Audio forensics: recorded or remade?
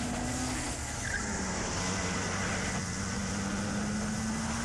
recorded